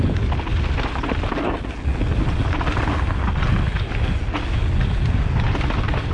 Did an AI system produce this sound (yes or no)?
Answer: no